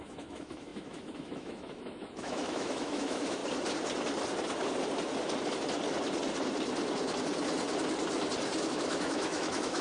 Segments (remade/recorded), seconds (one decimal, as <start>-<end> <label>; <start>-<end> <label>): 0.0-3.4 remade; 3.4-8.7 recorded; 8.7-9.8 remade